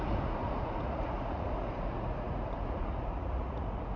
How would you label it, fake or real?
fake